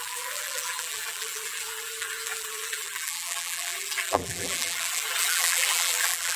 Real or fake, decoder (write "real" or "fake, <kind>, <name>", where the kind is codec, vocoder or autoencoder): fake, vocoder, BigVGAN v2